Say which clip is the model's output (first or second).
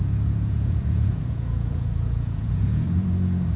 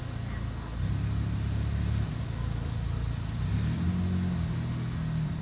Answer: first